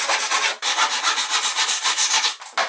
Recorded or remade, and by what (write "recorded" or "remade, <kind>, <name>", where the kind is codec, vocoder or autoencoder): recorded